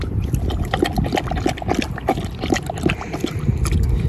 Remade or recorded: recorded